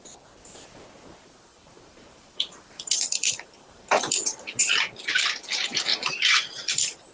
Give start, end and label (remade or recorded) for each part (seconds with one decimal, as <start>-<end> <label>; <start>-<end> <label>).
0.0-1.5 recorded; 1.5-5.0 remade; 5.0-5.9 recorded; 5.9-7.1 remade